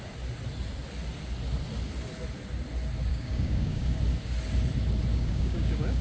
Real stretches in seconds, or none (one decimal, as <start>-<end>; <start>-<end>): 0.0-3.1; 4.0-5.1